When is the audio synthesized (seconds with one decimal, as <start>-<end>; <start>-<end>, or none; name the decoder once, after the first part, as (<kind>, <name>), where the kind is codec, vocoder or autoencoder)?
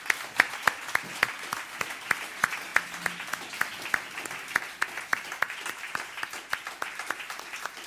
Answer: 5.1-7.2 (vocoder, BigVGAN v2)